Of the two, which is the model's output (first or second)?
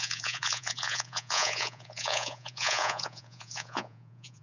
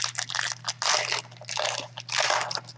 first